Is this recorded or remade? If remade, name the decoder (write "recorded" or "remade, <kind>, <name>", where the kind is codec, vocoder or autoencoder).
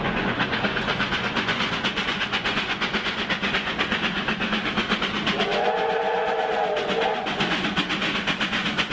remade, vocoder, Vocos